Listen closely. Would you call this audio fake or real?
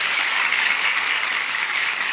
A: fake